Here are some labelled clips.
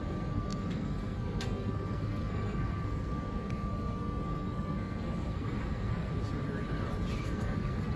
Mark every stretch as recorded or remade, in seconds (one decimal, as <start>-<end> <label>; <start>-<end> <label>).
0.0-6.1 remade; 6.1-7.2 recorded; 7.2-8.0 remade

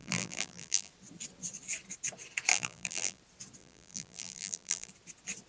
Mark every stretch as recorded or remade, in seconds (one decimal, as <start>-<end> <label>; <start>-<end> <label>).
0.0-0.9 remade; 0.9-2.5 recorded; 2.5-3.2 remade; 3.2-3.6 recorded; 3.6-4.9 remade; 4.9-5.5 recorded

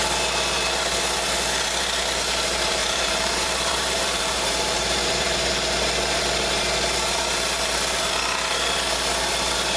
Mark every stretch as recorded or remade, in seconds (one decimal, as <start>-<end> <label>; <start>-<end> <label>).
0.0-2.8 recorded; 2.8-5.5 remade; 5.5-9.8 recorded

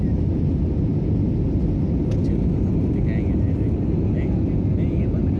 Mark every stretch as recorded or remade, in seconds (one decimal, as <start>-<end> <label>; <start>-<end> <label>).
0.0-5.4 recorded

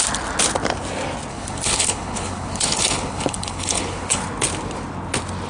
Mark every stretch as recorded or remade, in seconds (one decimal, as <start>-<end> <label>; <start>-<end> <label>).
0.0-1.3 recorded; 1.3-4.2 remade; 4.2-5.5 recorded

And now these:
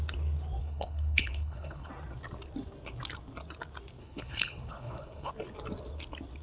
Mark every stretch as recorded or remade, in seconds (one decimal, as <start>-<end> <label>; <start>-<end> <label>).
0.0-0.6 recorded; 0.6-1.9 remade; 1.9-4.0 recorded; 4.0-5.3 remade; 5.3-6.4 recorded

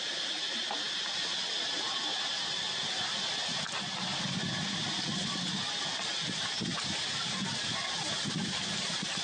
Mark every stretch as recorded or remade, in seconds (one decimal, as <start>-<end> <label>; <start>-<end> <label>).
0.0-9.2 recorded

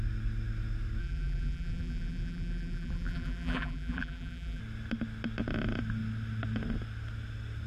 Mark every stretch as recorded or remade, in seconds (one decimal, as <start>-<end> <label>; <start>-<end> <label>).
0.0-1.0 recorded; 1.0-4.6 remade; 4.6-7.7 recorded